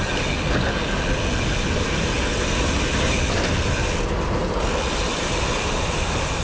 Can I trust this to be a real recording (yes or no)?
yes